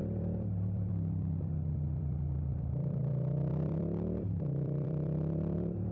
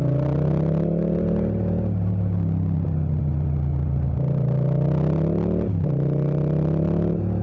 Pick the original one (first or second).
second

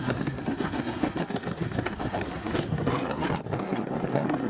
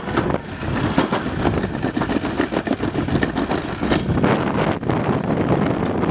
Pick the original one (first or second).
second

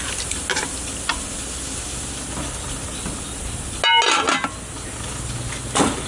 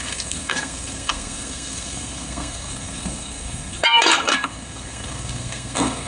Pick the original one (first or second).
first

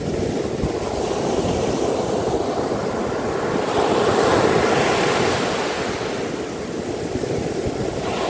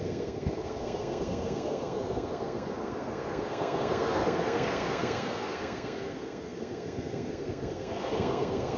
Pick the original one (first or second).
first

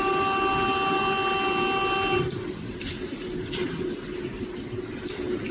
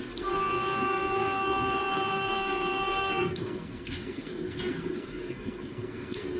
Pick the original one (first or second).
first